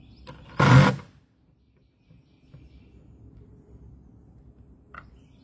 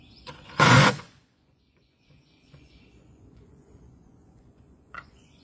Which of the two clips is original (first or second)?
first